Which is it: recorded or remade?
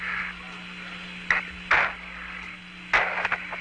recorded